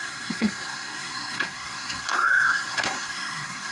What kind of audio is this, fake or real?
fake